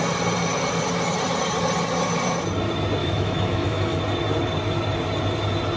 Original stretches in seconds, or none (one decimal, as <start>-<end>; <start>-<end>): 0.0-3.0; 4.0-5.8

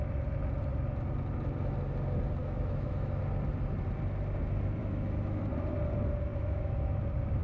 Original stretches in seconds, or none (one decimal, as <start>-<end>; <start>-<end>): 0.0-2.4; 3.2-4.8; 5.4-6.3; 7.0-7.4

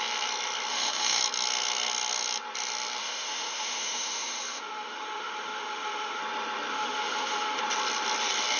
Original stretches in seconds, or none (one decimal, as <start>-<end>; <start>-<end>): 0.0-0.7; 1.2-3.0; 6.2-6.7; 7.6-8.6

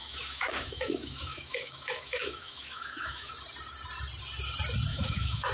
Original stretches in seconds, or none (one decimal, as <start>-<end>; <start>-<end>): 3.3-4.9

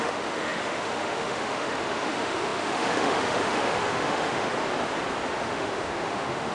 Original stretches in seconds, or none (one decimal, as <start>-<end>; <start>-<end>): 4.5-5.4

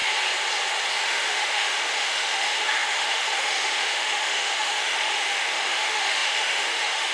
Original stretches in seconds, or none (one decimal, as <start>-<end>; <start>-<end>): 0.0-1.0